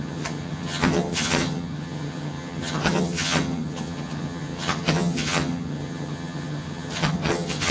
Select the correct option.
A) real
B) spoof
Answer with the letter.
B